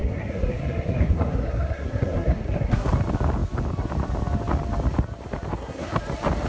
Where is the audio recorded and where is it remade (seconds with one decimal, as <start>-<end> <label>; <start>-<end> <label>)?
0.0-2.9 remade; 2.9-5.5 recorded; 5.5-6.0 remade; 6.0-6.5 recorded